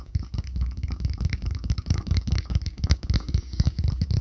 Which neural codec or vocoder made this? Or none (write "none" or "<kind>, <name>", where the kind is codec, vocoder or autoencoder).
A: codec, DAC